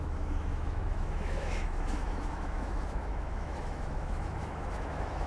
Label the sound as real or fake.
fake